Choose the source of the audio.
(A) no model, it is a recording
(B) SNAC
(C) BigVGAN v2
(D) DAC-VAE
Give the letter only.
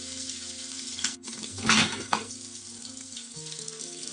B